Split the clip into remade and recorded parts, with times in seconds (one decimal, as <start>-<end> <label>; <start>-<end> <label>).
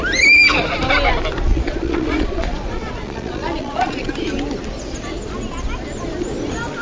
0.0-1.5 recorded; 1.5-4.1 remade; 4.1-6.8 recorded